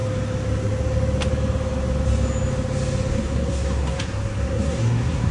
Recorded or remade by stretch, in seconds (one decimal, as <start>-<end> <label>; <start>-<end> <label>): 0.0-3.1 recorded; 3.1-5.3 remade